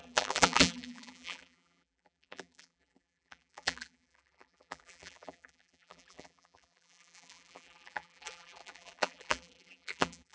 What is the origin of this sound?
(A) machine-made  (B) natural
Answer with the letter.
A